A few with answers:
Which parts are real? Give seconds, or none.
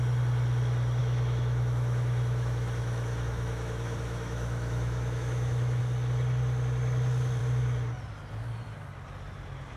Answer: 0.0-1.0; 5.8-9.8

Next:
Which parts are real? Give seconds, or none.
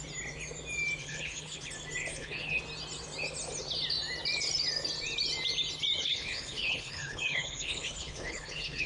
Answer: 0.0-1.0; 1.7-2.1; 2.6-6.0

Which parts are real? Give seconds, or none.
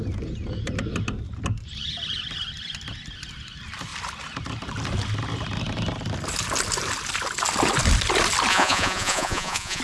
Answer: 0.0-8.5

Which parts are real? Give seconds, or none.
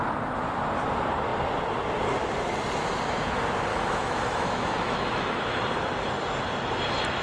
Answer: 0.0-3.7; 5.6-7.2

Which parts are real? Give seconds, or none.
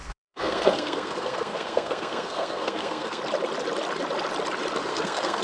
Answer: 3.2-4.8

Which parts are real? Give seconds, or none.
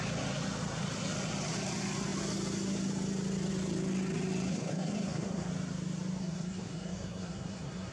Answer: 0.0-4.5; 5.5-6.2